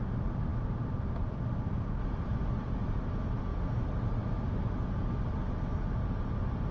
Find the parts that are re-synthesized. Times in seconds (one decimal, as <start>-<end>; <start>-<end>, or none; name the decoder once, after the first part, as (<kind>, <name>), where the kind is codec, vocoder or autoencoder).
none